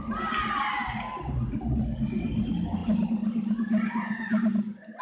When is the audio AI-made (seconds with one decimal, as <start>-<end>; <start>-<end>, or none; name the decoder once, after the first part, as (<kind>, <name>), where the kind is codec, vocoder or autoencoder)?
none